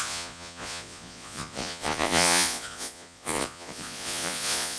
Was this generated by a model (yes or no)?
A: yes